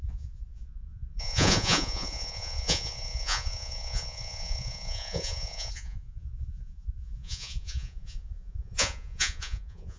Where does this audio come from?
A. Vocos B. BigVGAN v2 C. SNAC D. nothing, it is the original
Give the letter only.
A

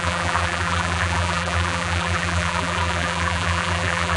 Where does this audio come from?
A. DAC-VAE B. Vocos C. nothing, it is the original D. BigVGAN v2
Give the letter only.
D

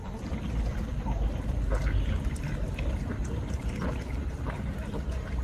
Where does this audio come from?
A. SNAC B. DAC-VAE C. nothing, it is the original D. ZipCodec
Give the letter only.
C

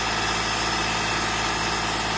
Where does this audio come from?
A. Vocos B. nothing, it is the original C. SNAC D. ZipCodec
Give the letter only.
B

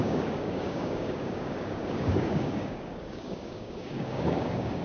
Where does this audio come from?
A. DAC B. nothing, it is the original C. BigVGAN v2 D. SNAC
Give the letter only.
A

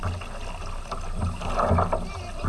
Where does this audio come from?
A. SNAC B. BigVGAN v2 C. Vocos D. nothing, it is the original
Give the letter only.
D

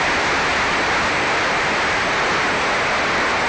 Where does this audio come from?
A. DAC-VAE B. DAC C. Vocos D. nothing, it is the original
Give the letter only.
D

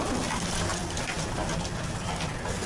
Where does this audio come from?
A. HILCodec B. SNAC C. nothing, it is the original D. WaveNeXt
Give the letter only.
C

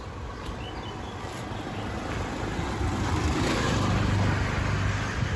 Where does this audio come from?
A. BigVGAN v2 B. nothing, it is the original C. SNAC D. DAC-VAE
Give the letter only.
B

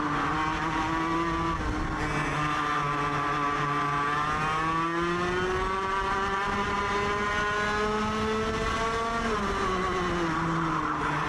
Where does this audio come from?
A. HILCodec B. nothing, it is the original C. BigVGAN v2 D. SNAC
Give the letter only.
B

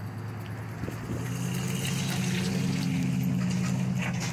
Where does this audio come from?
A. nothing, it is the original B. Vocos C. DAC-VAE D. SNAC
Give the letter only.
A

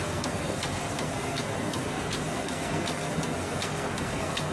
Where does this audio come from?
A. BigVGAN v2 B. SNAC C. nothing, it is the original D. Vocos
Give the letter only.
B